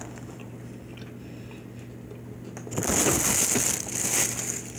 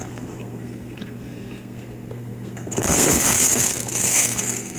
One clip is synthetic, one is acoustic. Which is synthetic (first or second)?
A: second